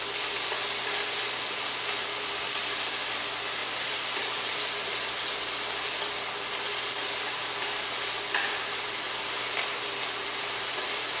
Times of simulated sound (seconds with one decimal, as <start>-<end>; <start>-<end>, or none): 3.6-4.8

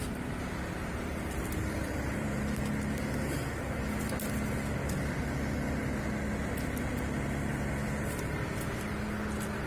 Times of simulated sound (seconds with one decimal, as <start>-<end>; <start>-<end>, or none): 0.8-2.4

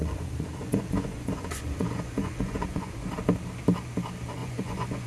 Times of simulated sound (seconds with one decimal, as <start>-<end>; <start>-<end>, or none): 0.0-3.1; 4.4-5.1

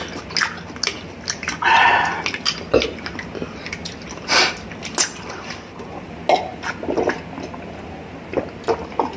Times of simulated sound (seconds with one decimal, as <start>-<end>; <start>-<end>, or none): none

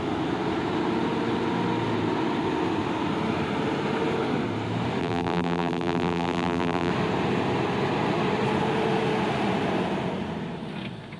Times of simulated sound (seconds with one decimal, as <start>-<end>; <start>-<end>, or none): 5.0-6.9

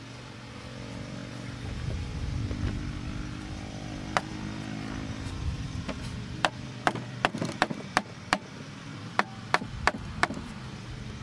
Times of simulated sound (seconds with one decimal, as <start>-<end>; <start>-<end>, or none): 0.0-1.2; 3.4-4.3; 5.3-11.2

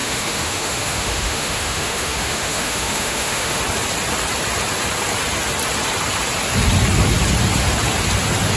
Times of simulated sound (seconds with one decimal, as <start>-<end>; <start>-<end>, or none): 0.0-3.6

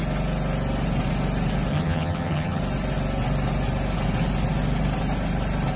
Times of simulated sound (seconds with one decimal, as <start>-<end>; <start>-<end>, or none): 1.7-2.6